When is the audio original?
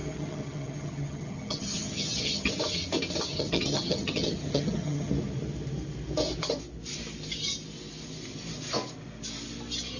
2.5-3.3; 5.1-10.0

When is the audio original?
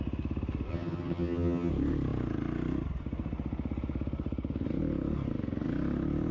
0.0-0.7; 1.7-6.3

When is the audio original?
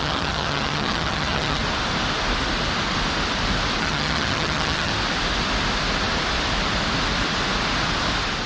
1.6-3.8; 4.9-8.5